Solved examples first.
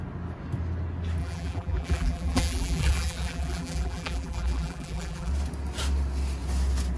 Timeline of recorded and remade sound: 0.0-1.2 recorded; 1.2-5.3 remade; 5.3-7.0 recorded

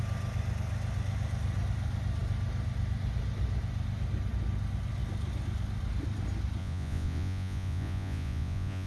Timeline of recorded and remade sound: 0.0-6.6 recorded; 6.6-8.9 remade

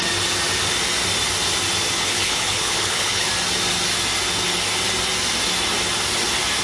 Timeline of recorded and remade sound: 0.0-2.0 recorded; 2.0-3.3 remade; 3.3-6.6 recorded

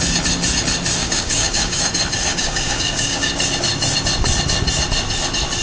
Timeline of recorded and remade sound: 0.0-1.0 recorded; 1.0-1.8 remade; 1.8-2.3 recorded; 2.3-3.3 remade; 3.3-5.6 recorded

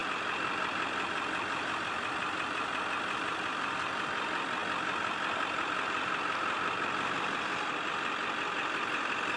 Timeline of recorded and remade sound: 0.0-9.4 recorded

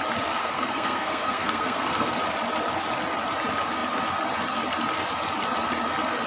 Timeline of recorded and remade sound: 0.0-0.4 recorded; 0.4-2.1 remade; 2.1-6.3 recorded